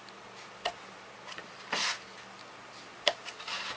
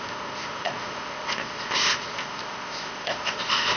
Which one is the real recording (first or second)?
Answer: first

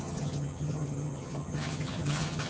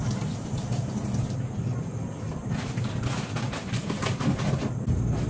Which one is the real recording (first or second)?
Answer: second